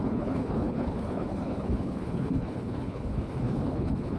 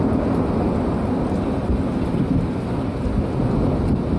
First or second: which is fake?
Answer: first